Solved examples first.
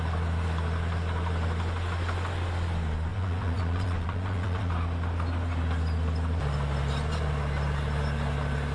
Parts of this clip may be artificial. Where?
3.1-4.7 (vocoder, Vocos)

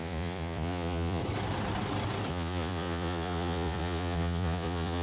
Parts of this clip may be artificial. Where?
0.0-1.2 (vocoder, Vocos); 2.3-5.0

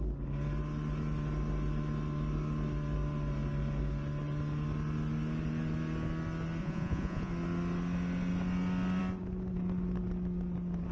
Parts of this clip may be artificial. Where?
6.6-7.3 (vocoder, Vocos)

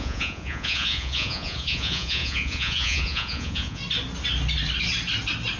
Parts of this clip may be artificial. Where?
0.0-3.8 (vocoder, Vocos)

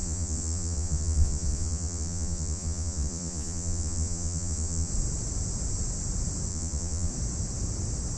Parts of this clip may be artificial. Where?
0.0-4.9 (vocoder, Vocos); 6.5-7.1

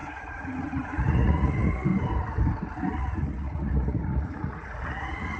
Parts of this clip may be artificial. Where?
0.0-1.9 (vocoder, Vocos); 2.8-5.4